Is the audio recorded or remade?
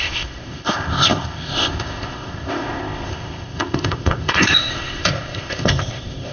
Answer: remade